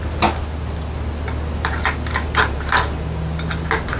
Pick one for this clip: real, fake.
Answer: real